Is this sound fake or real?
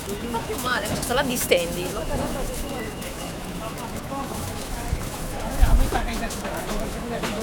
fake